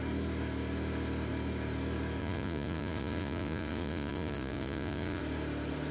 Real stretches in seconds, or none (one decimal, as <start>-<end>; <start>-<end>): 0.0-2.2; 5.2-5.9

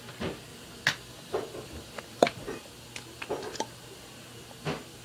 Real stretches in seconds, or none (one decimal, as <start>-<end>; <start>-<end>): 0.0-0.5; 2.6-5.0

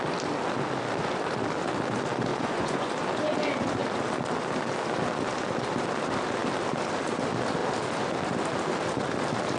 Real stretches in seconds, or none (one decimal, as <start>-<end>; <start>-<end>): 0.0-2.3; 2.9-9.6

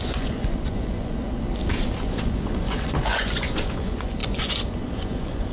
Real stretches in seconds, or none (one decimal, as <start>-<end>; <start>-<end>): 1.2-2.0

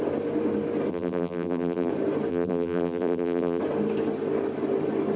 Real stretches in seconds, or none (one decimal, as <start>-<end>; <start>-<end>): 0.0-0.9; 1.9-2.3; 3.6-5.2